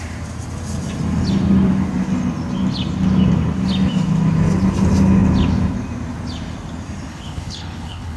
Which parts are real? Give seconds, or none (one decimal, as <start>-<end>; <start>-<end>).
0.0-7.1